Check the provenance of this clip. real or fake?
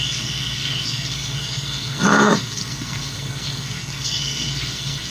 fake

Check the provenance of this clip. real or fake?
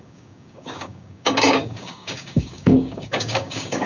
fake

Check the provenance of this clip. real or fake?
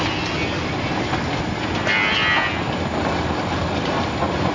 real